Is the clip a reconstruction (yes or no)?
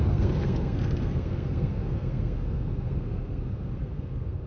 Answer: yes